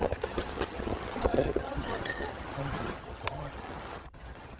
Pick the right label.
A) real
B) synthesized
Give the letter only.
B